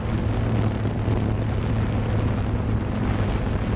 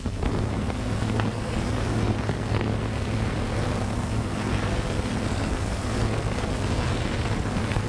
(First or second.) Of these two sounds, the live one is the first